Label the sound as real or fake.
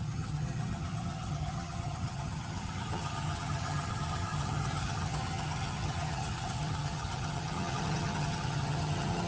fake